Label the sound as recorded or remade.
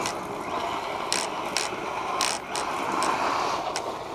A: recorded